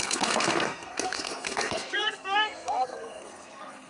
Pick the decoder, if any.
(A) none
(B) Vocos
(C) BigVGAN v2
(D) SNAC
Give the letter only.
D